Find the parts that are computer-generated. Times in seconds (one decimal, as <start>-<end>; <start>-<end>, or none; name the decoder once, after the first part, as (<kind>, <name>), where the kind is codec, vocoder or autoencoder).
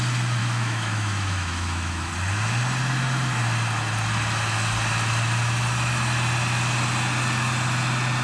0.4-2.1 (autoencoder, DAC-VAE)